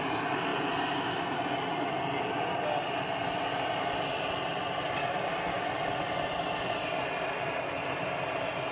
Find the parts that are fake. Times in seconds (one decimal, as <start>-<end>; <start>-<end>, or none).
none